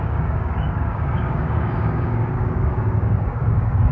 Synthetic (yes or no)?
yes